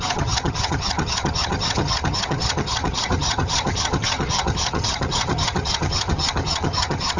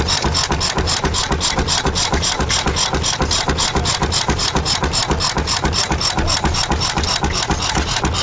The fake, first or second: first